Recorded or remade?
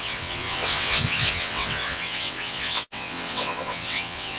remade